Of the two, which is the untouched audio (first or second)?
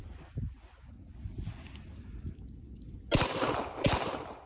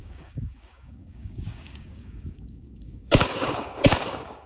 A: first